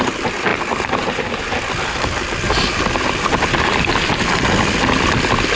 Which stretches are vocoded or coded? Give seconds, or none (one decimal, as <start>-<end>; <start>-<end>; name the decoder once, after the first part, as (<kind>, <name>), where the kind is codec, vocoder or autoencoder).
none

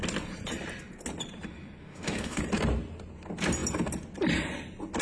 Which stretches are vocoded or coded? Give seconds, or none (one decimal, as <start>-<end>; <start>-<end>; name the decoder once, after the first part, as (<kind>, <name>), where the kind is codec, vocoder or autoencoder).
1.8-2.4 (autoencoder, DAC-VAE)

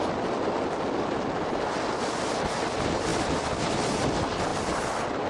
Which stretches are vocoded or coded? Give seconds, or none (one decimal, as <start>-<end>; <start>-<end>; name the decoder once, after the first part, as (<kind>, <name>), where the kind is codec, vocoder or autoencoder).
3.1-3.9 (vocoder, BigVGAN v2); 4.5-5.3

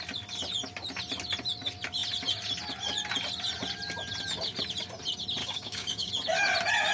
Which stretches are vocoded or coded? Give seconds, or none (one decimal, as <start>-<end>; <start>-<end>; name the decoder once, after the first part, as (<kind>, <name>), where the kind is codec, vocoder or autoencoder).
5.4-6.1 (codec, DAC)

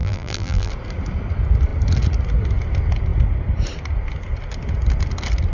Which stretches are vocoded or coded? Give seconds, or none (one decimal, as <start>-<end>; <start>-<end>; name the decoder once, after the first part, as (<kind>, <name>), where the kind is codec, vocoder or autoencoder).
0.0-0.7 (vocoder, BigVGAN v2)

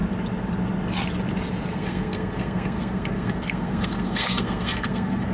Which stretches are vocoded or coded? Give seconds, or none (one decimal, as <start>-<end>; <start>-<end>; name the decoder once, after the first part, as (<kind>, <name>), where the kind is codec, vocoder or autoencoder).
1.7-5.3 (codec, SNAC)

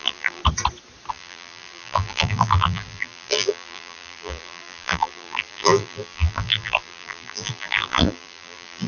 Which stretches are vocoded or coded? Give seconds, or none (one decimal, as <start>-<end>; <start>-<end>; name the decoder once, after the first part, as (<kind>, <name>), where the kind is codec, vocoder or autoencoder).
0.0-0.4 (vocoder, BigVGAN v2); 1.1-8.9

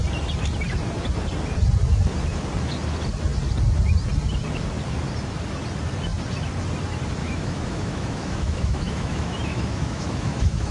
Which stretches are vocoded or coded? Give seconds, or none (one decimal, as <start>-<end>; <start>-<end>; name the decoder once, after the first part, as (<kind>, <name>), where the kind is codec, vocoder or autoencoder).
7.2-10.7 (autoencoder, DAC-VAE)